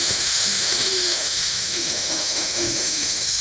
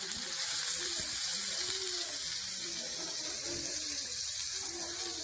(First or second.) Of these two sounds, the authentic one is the second